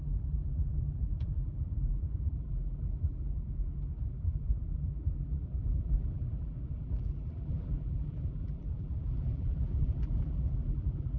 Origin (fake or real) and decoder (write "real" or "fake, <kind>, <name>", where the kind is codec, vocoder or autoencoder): fake, vocoder, BigVGAN v2